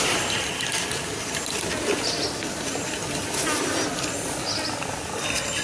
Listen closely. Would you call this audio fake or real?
real